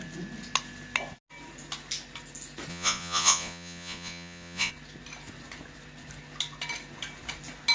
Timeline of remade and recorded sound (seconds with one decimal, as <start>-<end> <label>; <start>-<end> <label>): 0.0-2.7 recorded; 2.7-4.7 remade; 4.7-7.7 recorded